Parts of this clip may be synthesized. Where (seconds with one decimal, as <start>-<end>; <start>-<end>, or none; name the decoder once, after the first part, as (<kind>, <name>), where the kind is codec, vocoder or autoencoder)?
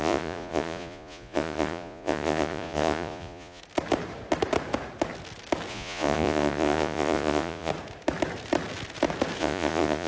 0.0-3.6 (vocoder, Vocos); 5.7-7.7; 9.4-10.1